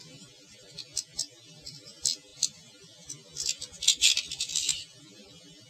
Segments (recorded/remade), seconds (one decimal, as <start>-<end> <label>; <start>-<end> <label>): 0.0-5.7 recorded